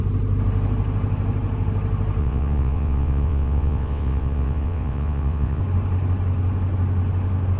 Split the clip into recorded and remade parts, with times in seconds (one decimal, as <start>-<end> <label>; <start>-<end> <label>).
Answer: 0.0-2.2 recorded; 2.2-5.6 remade; 5.6-7.6 recorded

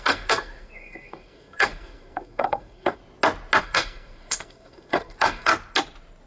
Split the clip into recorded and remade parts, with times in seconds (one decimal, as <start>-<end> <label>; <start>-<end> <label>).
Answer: 0.0-3.0 remade; 3.0-3.6 recorded; 3.6-5.5 remade; 5.5-6.3 recorded